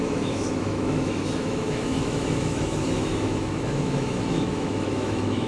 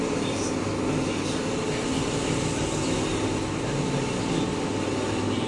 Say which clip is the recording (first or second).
second